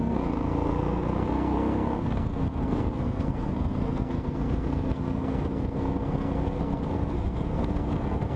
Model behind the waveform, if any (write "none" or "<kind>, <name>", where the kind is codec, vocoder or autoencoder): codec, SNAC